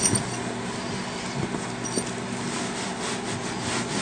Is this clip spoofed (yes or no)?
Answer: no